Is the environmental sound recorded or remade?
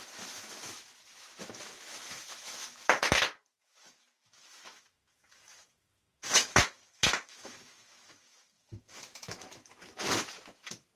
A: remade